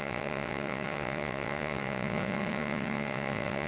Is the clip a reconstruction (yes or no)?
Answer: yes